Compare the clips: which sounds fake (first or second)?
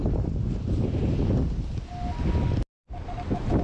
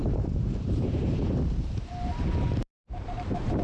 second